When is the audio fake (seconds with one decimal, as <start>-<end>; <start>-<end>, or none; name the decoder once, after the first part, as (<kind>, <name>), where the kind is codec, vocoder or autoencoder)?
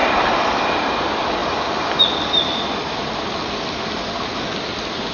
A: none